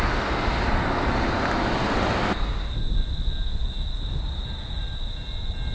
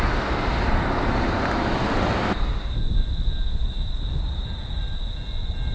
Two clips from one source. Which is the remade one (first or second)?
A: second